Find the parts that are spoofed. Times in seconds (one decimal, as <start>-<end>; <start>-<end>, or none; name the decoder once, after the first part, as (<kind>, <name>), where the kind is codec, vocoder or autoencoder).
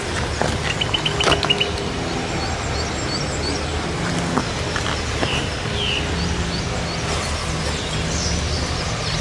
none